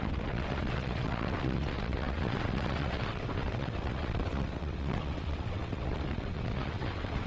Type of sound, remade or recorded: remade